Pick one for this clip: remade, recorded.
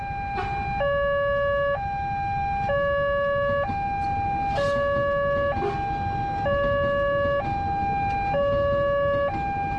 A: recorded